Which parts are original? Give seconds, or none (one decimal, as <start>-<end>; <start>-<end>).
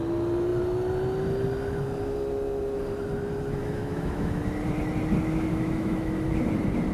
0.0-3.6; 4.4-5.5; 6.3-6.9